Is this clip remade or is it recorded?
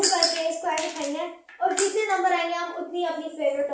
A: recorded